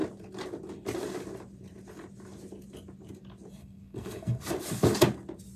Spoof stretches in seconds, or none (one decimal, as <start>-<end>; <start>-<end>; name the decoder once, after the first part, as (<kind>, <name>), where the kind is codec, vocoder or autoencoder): 3.6-4.4 (codec, SNAC)